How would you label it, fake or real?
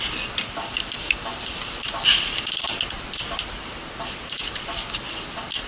real